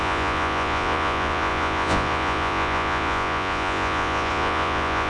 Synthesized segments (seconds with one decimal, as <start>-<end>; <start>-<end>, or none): 0.0-5.1